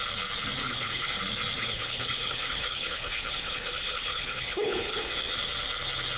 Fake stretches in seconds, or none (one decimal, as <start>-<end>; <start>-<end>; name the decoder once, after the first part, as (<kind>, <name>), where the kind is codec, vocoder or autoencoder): 0.6-1.2 (codec, HILCodec); 1.6-5.1